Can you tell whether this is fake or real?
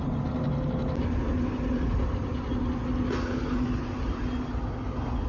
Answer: real